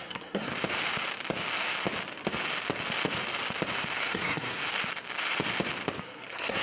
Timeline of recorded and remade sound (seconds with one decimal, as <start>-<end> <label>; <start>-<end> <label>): 0.0-0.5 remade; 0.5-4.0 recorded; 4.0-4.6 remade; 4.6-6.0 recorded; 6.0-6.6 remade